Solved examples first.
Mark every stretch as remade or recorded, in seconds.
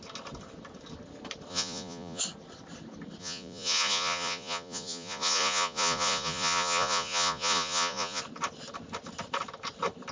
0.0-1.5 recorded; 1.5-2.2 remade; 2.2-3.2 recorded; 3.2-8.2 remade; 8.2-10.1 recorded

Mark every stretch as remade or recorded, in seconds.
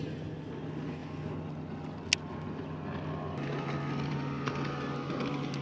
0.0-5.6 recorded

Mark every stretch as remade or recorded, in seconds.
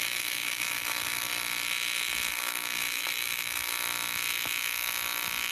0.0-1.3 remade; 1.3-2.3 recorded; 2.3-3.7 remade; 3.7-5.5 recorded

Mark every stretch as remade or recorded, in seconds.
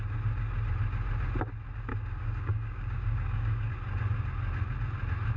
0.0-1.9 recorded; 1.9-3.7 remade; 3.7-5.4 recorded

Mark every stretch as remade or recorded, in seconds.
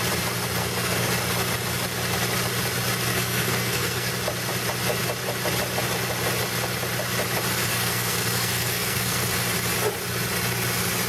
0.0-0.6 recorded; 0.6-1.1 remade; 1.1-3.1 recorded; 3.1-4.1 remade; 4.1-7.7 recorded; 7.7-9.2 remade; 9.2-11.1 recorded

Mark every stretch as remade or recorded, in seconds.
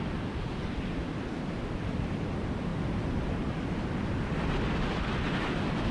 0.0-5.9 recorded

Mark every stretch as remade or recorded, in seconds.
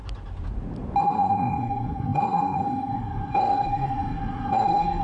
0.0-1.0 recorded; 1.0-5.0 remade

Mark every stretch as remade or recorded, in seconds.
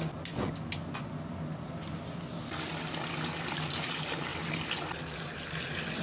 0.0-4.3 recorded; 4.3-4.8 remade; 4.8-6.0 recorded